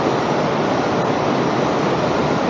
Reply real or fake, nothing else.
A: fake